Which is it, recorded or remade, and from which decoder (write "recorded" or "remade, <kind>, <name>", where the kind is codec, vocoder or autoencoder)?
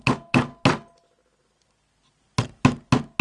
recorded